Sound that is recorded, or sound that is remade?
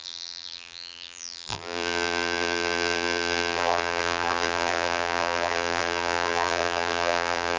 remade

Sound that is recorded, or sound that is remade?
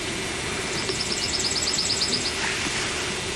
recorded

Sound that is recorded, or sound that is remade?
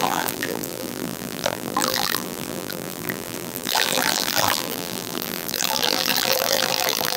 remade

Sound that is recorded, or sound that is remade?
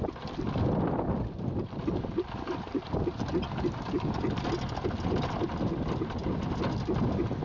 recorded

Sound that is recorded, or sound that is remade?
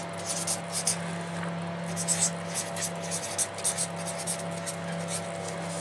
recorded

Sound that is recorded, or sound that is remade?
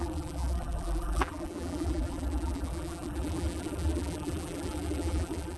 remade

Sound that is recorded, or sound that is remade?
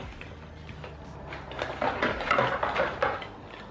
recorded